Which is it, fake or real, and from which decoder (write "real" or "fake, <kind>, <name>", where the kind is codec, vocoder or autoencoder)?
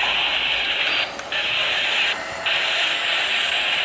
real